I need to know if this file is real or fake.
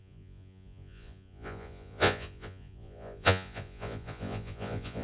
fake